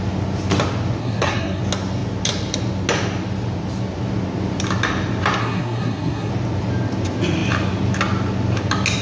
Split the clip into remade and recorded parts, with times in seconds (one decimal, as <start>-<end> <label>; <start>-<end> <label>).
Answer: 0.0-1.0 recorded; 1.0-1.6 remade; 1.6-5.4 recorded; 5.4-6.3 remade; 6.3-9.0 recorded

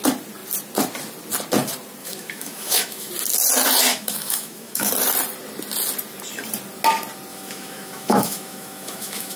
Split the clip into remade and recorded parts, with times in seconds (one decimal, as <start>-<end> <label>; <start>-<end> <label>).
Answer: 0.0-2.0 recorded; 2.0-3.1 remade; 3.1-3.9 recorded; 3.9-4.9 remade; 4.9-7.3 recorded; 7.3-9.4 remade

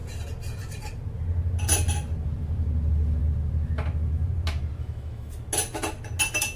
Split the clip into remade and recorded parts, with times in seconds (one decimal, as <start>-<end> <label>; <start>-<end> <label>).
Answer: 0.0-4.8 recorded; 4.8-5.3 remade; 5.3-6.6 recorded

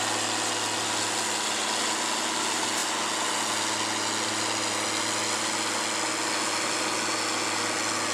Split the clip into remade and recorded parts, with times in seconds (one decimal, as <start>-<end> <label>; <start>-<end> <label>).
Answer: 0.0-8.1 recorded

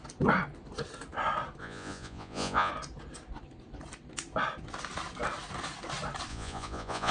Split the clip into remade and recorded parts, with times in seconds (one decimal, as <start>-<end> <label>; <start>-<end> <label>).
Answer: 0.0-1.6 recorded; 1.6-2.7 remade; 2.7-6.3 recorded; 6.3-7.1 remade